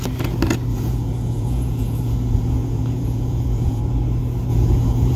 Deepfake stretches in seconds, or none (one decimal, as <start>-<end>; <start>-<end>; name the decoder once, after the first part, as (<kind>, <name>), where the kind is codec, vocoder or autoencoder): 0.7-3.8 (vocoder, Vocos); 4.5-5.2